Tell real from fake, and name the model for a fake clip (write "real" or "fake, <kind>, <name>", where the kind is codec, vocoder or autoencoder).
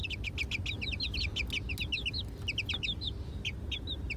real